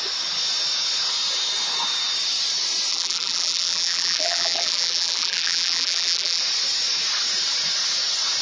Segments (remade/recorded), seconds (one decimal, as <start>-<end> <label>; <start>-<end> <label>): 0.0-2.9 recorded; 2.9-6.4 remade; 6.4-8.4 recorded